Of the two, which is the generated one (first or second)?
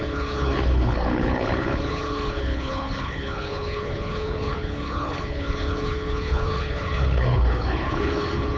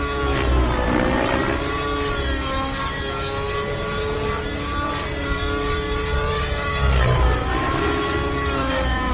first